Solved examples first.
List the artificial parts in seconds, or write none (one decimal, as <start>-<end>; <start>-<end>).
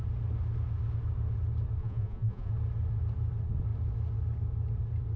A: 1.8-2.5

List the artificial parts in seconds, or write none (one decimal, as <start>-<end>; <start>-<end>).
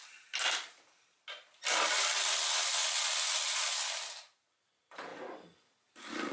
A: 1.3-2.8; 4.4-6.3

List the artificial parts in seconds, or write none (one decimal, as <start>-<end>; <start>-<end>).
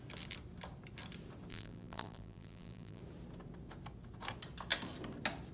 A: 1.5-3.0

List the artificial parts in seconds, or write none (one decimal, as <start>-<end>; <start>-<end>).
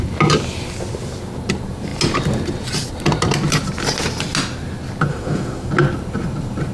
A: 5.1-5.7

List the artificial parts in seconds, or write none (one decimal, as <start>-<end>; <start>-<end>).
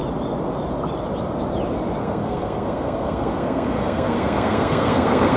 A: 2.0-5.4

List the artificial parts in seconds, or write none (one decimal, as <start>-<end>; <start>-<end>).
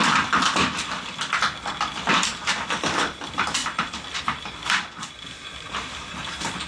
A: none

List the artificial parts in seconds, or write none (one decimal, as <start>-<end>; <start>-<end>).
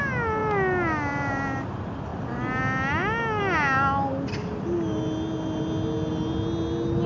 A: none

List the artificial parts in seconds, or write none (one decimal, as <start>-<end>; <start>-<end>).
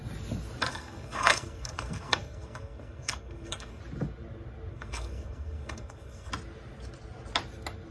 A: 0.7-3.8; 4.7-6.3